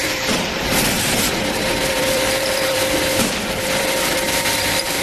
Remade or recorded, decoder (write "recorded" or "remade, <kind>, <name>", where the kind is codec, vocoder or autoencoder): remade, vocoder, BigVGAN v2